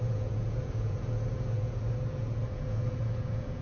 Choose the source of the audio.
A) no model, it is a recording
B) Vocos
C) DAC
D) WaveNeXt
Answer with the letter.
B